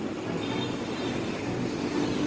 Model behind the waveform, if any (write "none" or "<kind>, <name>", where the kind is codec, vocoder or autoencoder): none